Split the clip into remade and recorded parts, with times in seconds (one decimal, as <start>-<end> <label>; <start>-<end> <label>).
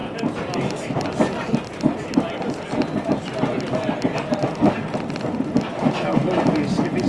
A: 0.0-7.1 recorded